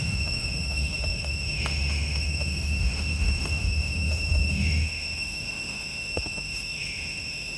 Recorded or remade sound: remade